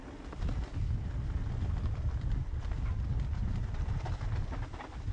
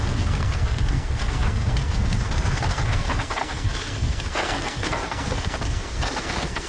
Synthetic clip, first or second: second